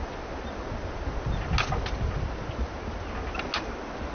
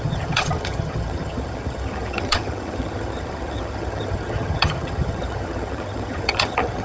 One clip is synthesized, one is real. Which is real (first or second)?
first